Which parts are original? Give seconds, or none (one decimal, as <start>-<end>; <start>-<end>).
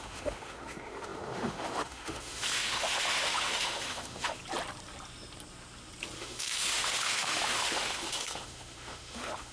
4.4-6.2